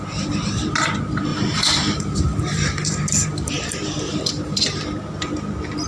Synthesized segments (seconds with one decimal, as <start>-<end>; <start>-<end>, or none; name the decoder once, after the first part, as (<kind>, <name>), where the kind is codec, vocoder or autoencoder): 1.3-4.8 (vocoder, BigVGAN v2)